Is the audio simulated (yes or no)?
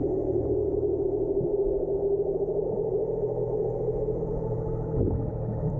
no